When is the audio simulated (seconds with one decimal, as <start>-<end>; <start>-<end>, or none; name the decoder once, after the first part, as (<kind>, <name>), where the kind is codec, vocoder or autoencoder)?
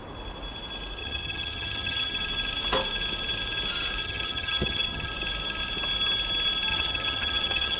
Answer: 1.0-2.2 (vocoder, HiFi-GAN); 4.0-5.1; 6.7-7.8